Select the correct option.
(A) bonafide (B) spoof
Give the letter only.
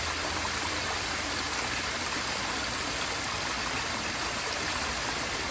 A